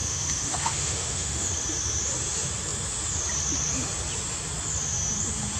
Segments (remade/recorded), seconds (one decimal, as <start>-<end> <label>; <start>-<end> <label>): 0.0-1.5 remade; 1.5-5.6 recorded